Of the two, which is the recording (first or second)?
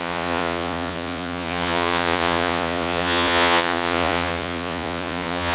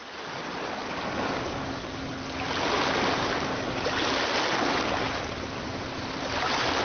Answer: second